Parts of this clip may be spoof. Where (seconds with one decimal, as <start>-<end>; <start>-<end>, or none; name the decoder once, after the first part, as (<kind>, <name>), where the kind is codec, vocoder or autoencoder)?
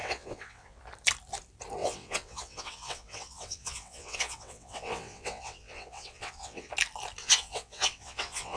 0.0-0.8 (vocoder, WaveNeXt); 1.8-6.7; 7.2-8.6